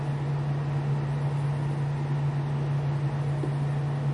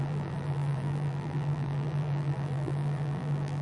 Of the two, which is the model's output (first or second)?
second